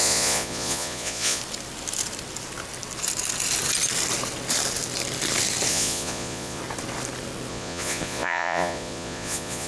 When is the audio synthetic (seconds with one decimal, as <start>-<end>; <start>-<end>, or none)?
0.0-1.4; 5.7-6.6; 7.5-9.7